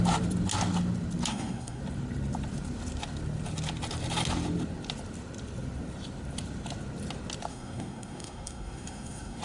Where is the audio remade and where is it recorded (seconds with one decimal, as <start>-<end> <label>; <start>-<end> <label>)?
0.0-1.3 recorded; 1.3-1.8 remade; 1.8-7.5 recorded; 7.5-9.4 remade